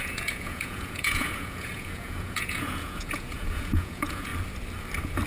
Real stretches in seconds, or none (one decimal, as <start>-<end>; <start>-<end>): 4.3-5.3